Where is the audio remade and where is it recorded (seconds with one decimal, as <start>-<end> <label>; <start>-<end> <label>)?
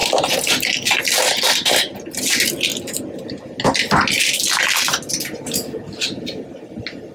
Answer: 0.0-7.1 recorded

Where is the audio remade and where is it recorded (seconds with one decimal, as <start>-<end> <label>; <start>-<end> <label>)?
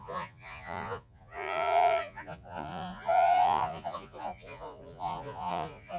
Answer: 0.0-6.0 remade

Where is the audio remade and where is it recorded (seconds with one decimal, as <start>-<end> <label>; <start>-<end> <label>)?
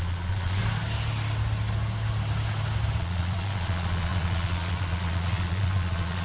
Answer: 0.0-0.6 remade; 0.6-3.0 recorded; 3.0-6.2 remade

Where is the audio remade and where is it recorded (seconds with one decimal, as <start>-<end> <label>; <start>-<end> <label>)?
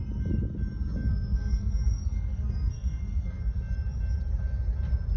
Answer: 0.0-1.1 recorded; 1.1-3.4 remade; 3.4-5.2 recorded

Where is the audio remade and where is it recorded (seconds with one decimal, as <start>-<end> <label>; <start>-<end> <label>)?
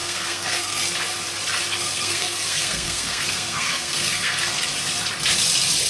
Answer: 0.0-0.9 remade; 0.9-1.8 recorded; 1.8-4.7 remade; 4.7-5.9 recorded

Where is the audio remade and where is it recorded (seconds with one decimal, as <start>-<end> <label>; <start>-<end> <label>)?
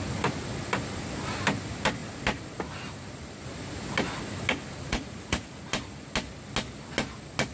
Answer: 0.0-4.7 recorded; 4.7-5.6 remade; 5.6-7.5 recorded